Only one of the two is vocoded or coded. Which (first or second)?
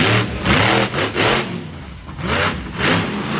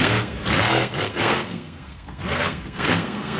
second